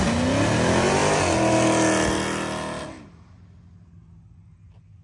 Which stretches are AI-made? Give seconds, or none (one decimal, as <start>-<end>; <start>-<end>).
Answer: none